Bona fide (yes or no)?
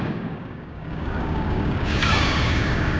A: no